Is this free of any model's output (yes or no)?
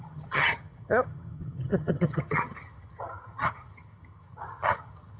no